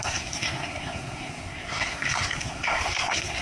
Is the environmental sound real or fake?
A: fake